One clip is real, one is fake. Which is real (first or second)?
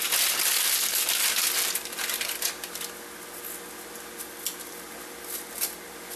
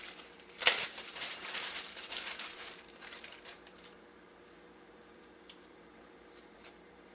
first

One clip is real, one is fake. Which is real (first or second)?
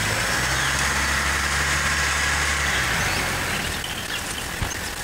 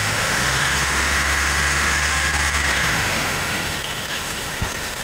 first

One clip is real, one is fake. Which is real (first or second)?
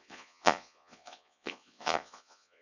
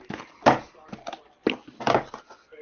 second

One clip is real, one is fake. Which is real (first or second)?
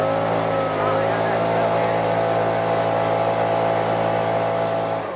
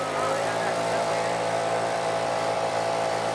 first